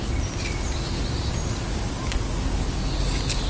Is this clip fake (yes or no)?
no